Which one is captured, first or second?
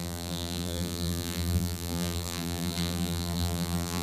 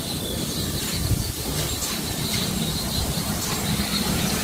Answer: second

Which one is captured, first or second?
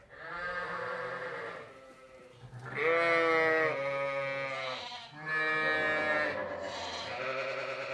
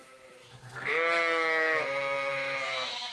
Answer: first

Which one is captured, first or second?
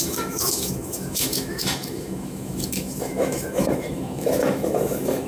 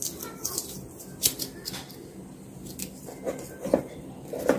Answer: second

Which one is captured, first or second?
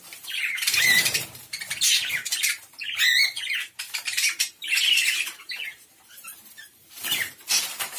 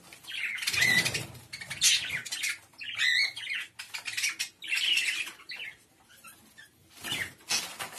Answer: second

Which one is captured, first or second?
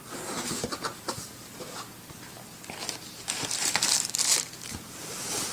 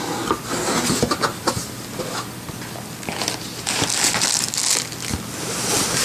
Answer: second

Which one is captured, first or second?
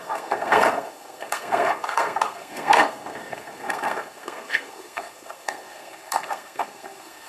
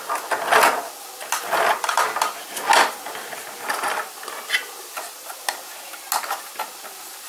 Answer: second